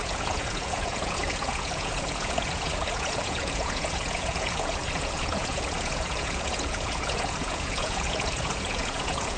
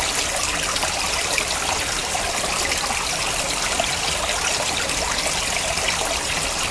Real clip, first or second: second